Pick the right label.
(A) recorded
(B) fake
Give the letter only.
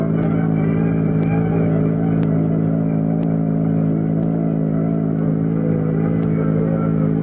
A